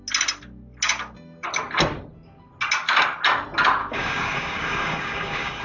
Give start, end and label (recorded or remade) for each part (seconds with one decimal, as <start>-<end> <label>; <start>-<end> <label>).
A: 0.0-3.8 recorded; 3.8-5.6 remade